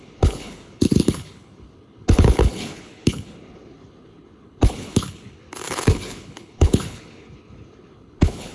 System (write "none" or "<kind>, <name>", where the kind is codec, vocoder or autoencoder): codec, HILCodec